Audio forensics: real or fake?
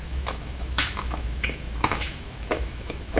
fake